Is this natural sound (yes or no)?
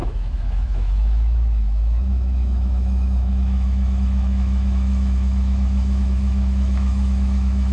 no